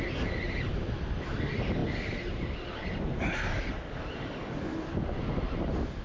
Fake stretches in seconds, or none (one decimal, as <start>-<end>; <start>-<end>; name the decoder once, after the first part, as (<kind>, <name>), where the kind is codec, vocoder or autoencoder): none